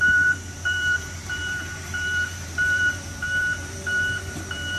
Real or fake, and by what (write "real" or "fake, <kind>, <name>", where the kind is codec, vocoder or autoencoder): fake, vocoder, BigVGAN v2